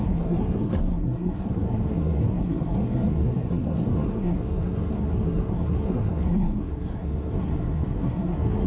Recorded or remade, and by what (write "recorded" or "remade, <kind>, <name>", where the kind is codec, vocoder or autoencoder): remade, codec, SNAC